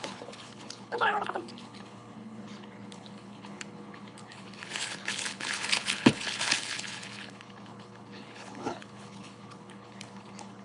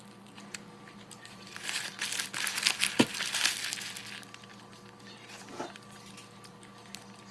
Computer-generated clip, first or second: first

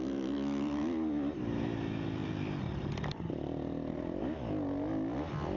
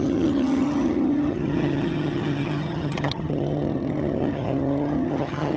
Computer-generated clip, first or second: second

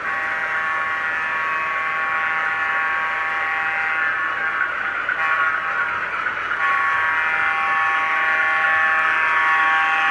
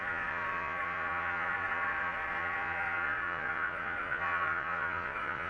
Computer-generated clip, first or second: second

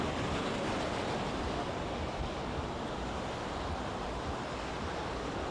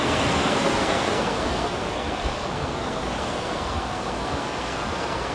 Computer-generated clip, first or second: second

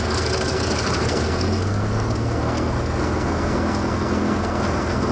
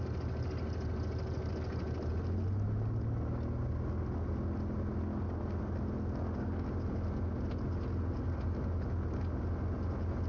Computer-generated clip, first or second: first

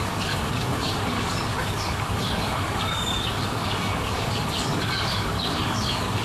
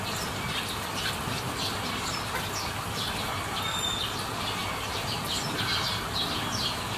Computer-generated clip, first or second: first